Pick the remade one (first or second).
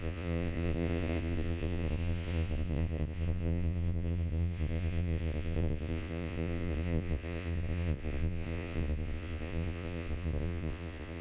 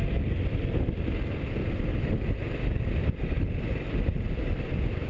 first